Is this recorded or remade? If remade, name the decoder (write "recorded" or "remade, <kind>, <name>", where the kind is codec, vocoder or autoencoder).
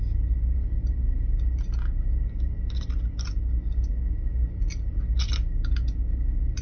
recorded